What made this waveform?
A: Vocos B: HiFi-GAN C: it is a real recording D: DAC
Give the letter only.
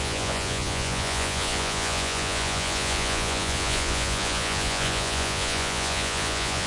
A